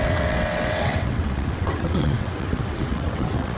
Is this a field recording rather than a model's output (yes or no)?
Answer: no